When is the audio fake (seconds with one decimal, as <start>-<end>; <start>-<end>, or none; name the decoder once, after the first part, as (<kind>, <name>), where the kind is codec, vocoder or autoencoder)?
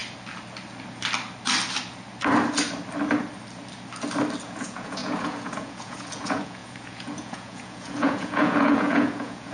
4.4-9.5 (vocoder, Vocos)